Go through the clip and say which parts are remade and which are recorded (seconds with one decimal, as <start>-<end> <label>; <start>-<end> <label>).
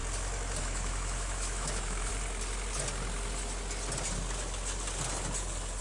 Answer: 0.0-0.6 recorded; 0.6-2.1 remade; 2.1-5.8 recorded